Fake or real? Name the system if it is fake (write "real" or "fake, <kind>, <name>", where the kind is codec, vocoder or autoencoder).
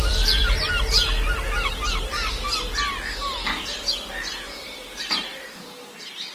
real